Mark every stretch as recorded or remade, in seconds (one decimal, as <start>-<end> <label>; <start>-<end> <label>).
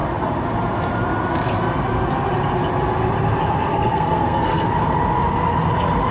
0.0-3.7 recorded; 3.7-4.7 remade; 4.7-6.1 recorded